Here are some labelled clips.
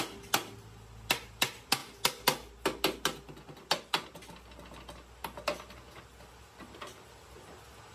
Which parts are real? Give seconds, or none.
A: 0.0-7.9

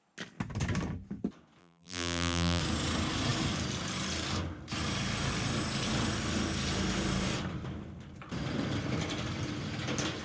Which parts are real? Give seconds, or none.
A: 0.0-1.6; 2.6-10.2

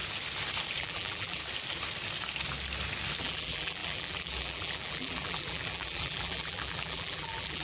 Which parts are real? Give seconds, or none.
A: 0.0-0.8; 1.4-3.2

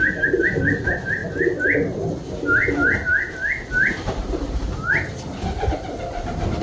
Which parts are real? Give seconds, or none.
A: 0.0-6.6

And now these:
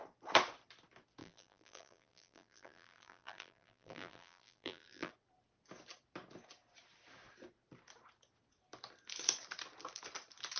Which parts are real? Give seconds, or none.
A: 0.0-1.2; 5.1-10.6

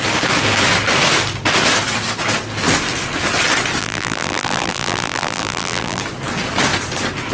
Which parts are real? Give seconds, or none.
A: 0.0-3.8; 6.0-7.3

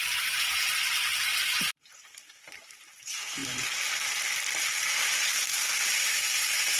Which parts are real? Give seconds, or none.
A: 3.4-4.6